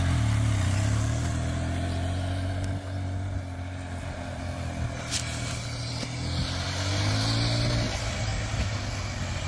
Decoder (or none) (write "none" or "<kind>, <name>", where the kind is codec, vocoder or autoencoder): none